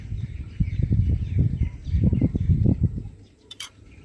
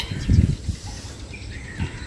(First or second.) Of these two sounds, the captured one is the second